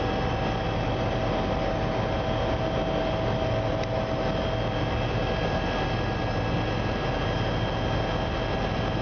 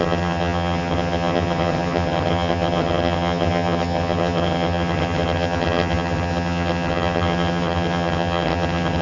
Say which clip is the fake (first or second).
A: second